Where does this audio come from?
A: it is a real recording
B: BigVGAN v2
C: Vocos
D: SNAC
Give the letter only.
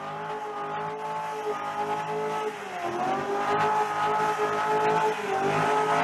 A